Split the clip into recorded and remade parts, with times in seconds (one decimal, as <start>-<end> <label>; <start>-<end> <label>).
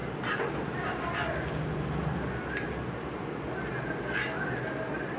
0.0-5.2 recorded